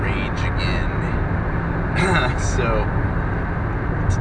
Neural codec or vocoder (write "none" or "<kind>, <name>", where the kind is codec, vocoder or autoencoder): none